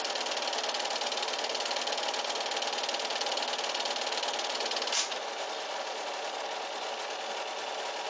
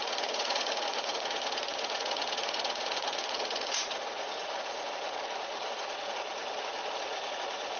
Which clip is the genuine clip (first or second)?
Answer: first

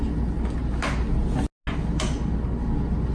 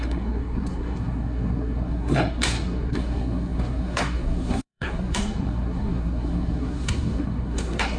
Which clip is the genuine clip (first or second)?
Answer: first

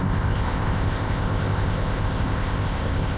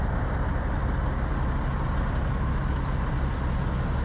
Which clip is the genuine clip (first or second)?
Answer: second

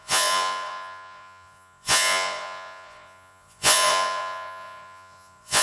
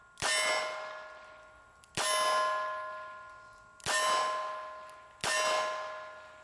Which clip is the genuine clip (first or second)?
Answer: second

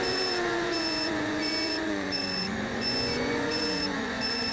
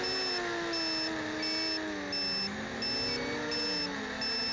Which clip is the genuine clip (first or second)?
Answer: second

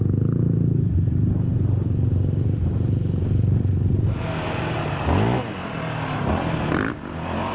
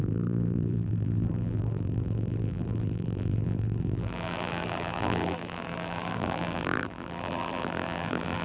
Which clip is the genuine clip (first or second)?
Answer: first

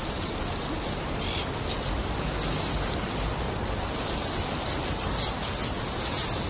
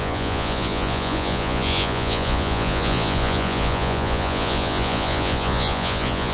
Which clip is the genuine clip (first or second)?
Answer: first